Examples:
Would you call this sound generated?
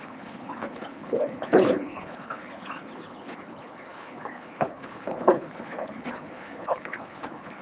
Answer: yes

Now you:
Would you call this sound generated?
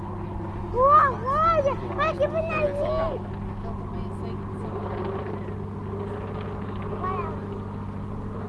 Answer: no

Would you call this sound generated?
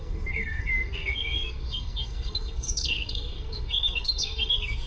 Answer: yes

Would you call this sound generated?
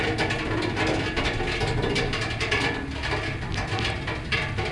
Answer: no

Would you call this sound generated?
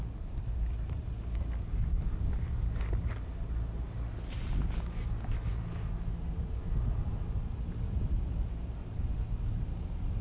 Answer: no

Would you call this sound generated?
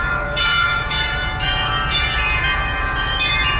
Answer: yes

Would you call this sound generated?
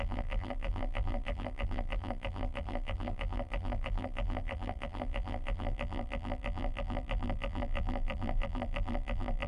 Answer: yes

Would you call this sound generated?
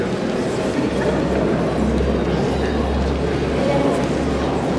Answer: no